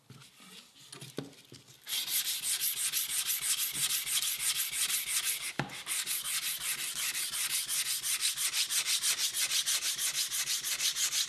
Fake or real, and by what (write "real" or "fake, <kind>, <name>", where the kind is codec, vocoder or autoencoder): real